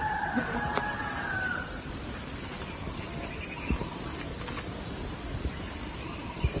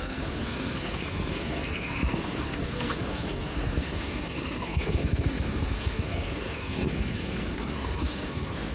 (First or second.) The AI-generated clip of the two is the second